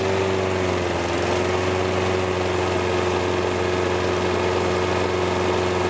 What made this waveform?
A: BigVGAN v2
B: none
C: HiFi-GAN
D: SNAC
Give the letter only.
B